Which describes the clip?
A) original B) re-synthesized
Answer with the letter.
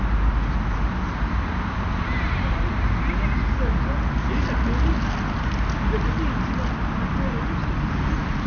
A